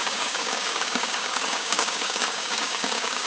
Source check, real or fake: fake